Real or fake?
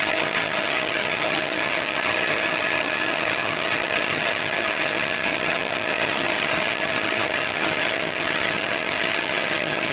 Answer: fake